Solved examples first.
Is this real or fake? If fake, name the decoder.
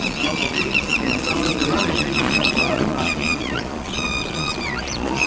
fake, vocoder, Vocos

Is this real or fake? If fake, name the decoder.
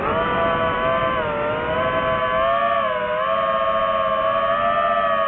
real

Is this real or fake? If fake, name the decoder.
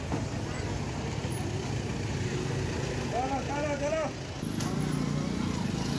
real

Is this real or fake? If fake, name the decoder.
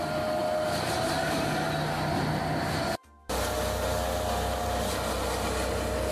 real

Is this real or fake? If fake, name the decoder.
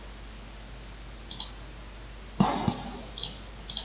real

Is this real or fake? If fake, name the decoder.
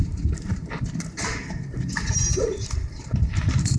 real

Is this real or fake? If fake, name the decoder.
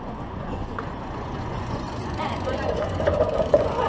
fake, vocoder, Vocos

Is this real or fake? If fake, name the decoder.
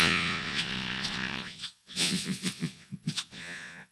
fake, vocoder, Vocos